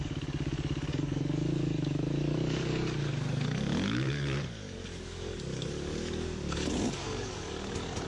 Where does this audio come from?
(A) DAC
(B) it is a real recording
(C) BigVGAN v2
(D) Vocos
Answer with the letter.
A